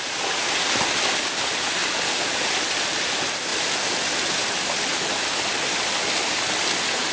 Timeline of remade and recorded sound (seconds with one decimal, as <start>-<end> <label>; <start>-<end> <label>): 0.0-7.1 recorded